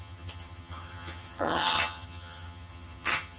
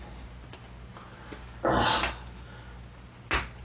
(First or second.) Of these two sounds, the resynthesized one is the first